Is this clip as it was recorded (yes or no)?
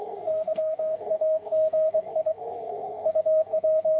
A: no